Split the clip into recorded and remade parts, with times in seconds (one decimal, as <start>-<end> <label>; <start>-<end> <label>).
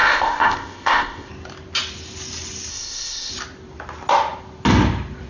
0.0-1.3 remade; 1.3-2.7 recorded; 2.7-3.3 remade; 3.3-5.3 recorded